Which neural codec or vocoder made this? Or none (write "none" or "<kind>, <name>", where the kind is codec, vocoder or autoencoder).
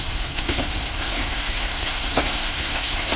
codec, SNAC